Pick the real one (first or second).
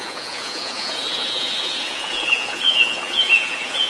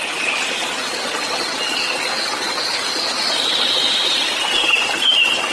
second